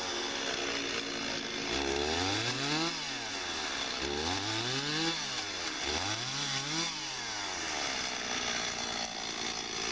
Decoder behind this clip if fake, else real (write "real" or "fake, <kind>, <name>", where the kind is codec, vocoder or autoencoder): real